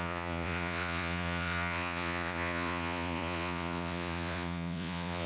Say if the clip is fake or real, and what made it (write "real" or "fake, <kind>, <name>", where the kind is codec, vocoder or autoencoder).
fake, vocoder, Vocos